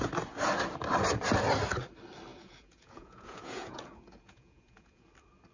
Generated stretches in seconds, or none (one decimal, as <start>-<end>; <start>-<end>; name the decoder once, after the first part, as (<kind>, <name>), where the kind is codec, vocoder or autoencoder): 2.3-5.1 (vocoder, Vocos)